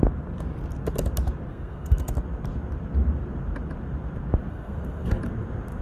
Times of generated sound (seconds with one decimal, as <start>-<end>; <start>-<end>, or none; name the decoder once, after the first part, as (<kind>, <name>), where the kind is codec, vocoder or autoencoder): 1.5-2.1 (codec, SNAC); 4.5-5.2